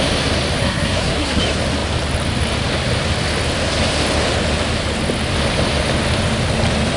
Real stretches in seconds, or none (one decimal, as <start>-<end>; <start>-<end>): 0.0-0.6; 1.4-7.0